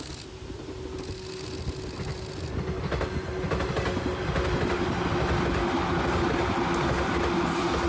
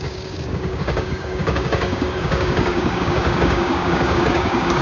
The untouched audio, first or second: first